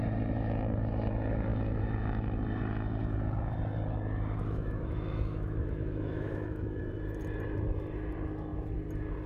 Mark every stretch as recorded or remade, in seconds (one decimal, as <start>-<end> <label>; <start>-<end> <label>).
0.0-4.4 recorded; 4.4-6.8 remade; 6.8-9.3 recorded